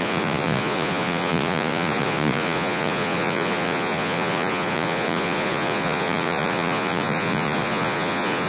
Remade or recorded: remade